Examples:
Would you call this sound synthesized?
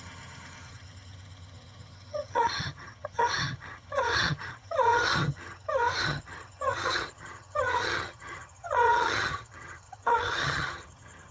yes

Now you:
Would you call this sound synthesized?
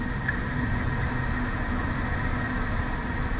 no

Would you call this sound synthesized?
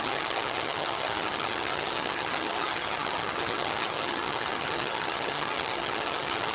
yes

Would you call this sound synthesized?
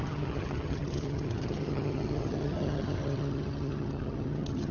yes